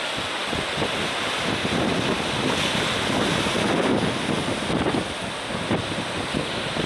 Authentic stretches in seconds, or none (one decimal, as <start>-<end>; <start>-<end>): 0.0-6.9